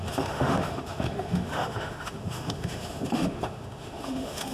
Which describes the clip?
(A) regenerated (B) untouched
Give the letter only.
A